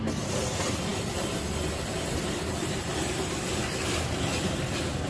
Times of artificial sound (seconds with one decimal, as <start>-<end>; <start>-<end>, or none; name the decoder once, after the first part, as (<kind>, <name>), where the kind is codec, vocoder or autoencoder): none